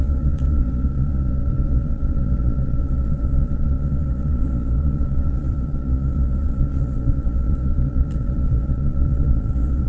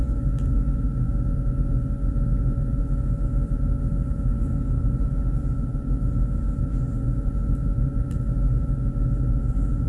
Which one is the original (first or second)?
second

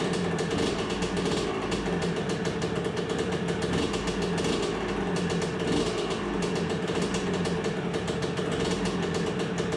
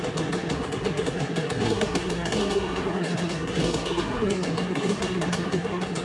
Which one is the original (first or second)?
first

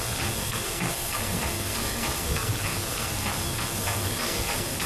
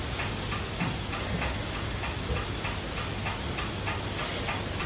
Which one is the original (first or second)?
second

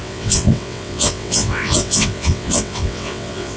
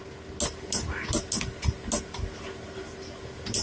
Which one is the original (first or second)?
second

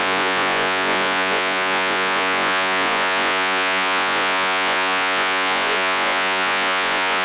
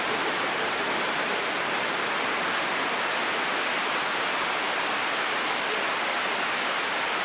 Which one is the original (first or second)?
second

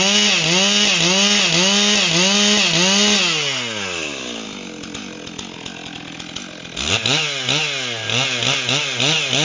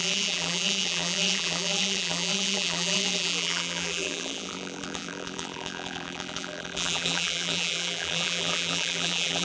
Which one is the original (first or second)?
first